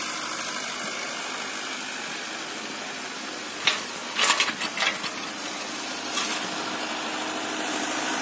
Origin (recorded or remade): recorded